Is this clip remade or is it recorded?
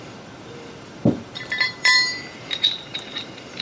remade